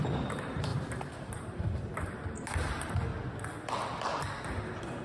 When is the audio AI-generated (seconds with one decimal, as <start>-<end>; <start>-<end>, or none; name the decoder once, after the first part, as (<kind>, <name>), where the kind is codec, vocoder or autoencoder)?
0.0-3.1 (vocoder, BigVGAN v2); 4.5-5.0